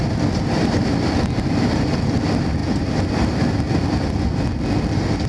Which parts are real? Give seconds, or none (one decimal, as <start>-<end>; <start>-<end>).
0.0-2.6; 3.4-5.3